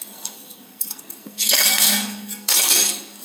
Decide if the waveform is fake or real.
fake